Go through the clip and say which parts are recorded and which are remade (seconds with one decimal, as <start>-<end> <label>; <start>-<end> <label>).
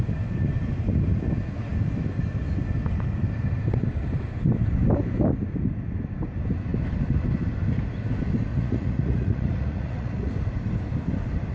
0.0-8.5 recorded; 8.5-10.3 remade; 10.3-11.5 recorded